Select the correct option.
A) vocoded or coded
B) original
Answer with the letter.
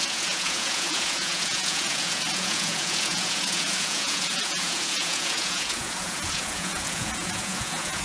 A